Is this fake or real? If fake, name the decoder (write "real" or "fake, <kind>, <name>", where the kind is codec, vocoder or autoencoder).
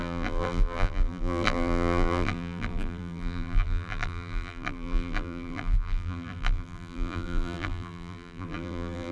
fake, vocoder, BigVGAN v2